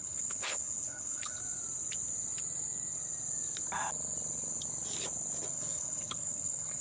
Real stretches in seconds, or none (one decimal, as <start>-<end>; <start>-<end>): 1.4-5.5